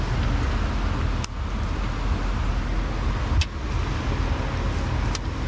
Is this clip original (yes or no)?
yes